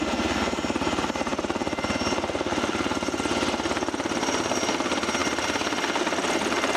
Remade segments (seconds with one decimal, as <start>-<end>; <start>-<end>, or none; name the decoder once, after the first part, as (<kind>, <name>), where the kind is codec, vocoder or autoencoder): 1.3-2.9 (vocoder, BigVGAN v2)